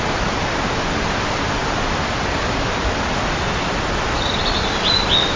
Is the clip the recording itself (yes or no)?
yes